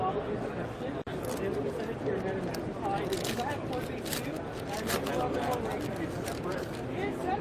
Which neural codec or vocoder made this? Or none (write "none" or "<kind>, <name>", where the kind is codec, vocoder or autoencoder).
none